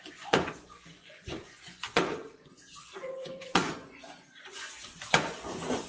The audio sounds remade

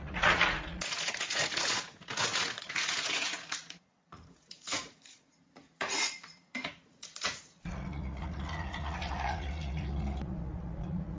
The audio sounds remade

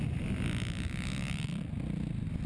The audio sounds recorded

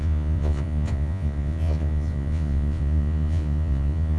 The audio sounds remade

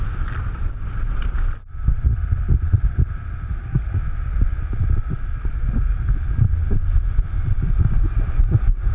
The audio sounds recorded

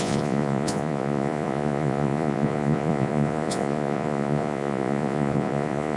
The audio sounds remade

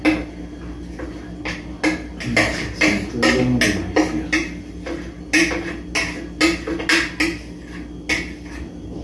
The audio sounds recorded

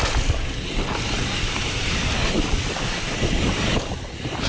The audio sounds recorded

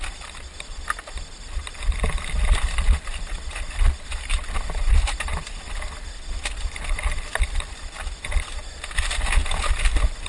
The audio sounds recorded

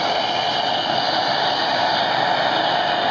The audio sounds recorded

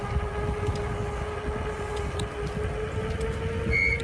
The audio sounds recorded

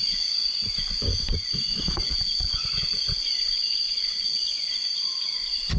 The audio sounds remade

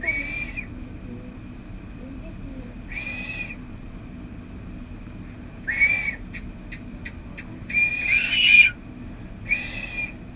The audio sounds recorded